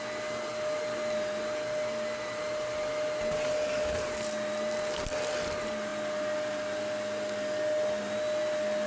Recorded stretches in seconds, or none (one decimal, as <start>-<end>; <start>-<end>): 0.0-8.9